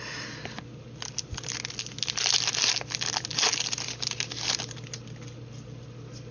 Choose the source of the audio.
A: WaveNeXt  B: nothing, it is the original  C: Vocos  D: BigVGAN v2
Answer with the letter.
B